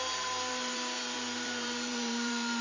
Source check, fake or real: fake